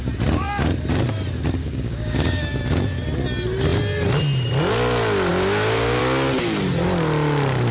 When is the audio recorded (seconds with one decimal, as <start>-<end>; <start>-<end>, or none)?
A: 0.0-1.6; 2.6-5.3; 6.0-7.7